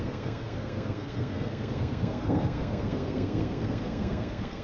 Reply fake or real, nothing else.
fake